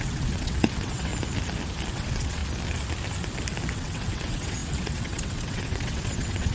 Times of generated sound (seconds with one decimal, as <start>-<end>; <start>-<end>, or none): 0.0-1.1; 1.9-2.4; 3.7-6.5